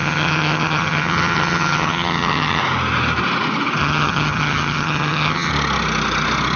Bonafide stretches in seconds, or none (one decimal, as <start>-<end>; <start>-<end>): 2.6-3.8; 5.5-6.6